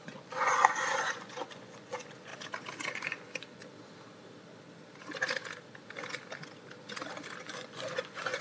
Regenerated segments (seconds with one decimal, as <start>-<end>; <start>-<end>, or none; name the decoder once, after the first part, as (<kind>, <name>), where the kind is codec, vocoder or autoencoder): 0.0-2.3 (vocoder, Vocos); 2.9-3.6; 7.4-8.4